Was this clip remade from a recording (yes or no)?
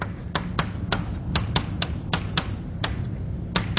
no